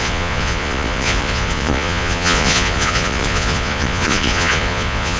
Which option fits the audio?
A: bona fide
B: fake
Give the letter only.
B